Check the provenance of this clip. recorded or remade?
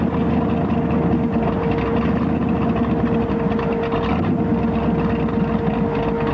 recorded